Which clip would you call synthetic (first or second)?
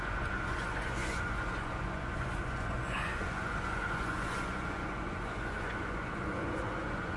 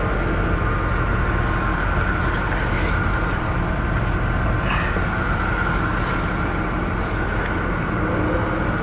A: first